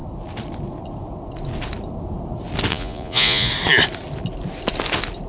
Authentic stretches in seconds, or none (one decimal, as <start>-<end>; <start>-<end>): 0.0-2.7; 3.5-5.3